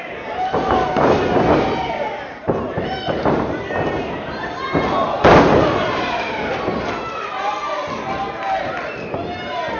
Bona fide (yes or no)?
yes